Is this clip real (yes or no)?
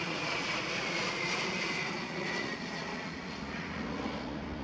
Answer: no